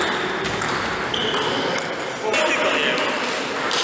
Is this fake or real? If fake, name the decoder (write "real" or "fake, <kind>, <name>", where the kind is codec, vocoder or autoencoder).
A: real